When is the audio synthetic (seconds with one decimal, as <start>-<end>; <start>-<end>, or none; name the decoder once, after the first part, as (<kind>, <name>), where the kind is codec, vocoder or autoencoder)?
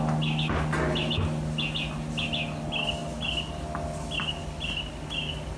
none